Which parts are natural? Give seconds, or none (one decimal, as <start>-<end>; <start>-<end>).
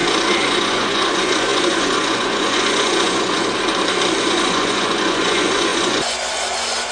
3.4-4.2